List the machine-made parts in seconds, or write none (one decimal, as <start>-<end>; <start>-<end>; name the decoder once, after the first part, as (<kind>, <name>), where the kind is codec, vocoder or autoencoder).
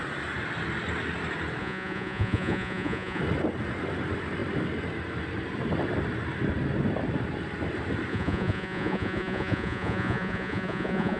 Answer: 1.6-3.2 (vocoder, Vocos); 8.1-11.2